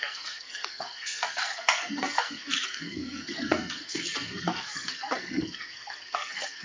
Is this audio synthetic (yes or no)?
yes